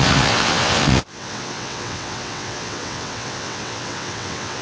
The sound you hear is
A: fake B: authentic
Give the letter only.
A